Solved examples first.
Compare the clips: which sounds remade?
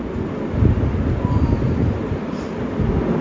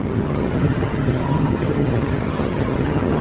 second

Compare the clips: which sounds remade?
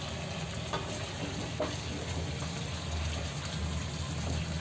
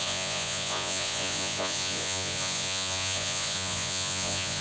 second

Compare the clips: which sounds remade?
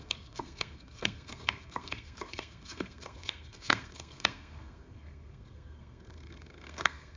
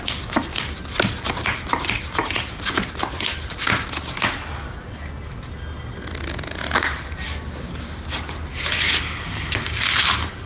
first